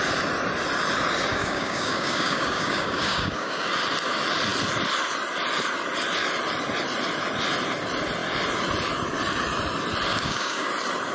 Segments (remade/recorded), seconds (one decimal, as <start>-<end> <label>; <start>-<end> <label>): 0.0-1.3 recorded; 1.3-3.7 remade; 3.7-10.1 recorded; 10.1-10.7 remade; 10.7-11.1 recorded